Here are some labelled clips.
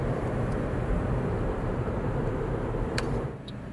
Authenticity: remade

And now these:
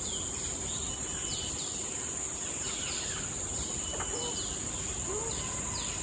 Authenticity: recorded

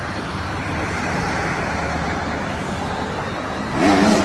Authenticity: recorded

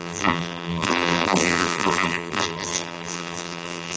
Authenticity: remade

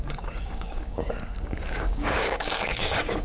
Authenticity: remade